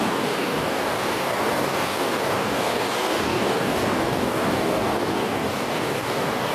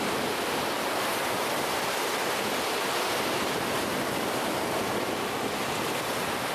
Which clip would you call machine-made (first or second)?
first